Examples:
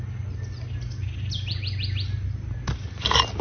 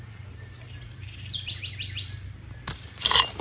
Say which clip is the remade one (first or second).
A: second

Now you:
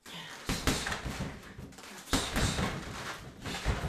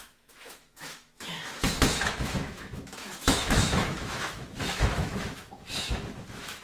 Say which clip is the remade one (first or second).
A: second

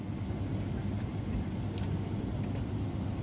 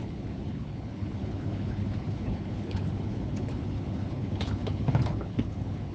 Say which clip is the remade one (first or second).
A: second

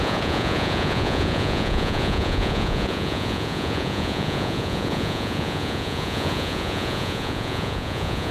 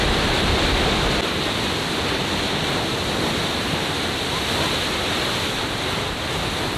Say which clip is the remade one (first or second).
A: first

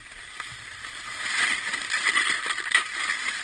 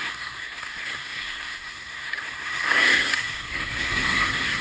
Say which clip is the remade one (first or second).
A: second